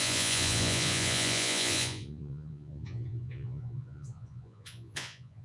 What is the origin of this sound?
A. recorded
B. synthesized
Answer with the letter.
B